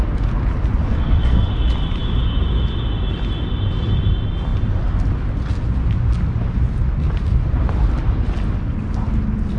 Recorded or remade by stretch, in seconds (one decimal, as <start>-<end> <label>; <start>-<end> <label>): 0.0-0.9 recorded; 0.9-1.5 remade; 1.5-9.6 recorded